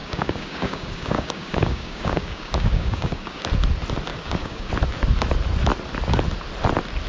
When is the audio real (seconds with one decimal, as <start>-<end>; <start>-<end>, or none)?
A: 3.4-4.1; 4.7-7.1